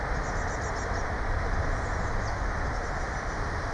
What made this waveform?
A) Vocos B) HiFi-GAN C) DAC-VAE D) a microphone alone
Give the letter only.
D